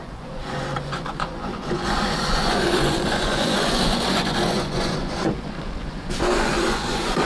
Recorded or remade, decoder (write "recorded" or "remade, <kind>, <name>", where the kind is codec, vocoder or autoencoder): remade, vocoder, Vocos